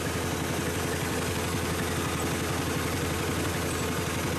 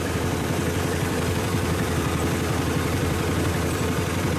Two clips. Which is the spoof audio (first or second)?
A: second